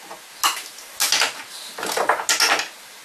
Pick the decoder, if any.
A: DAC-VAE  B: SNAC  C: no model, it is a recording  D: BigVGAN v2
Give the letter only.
C